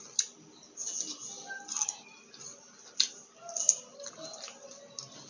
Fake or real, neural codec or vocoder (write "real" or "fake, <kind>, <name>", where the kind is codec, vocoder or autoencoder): real